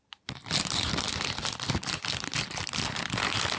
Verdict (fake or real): fake